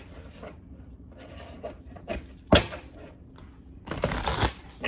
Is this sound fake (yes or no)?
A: no